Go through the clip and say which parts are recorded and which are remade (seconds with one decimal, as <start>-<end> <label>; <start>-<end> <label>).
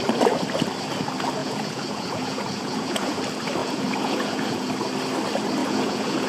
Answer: 0.0-1.4 recorded; 1.4-3.2 remade; 3.2-3.6 recorded; 3.6-4.7 remade; 4.7-5.6 recorded; 5.6-6.3 remade